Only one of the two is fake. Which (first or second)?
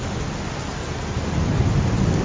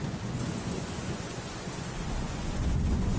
second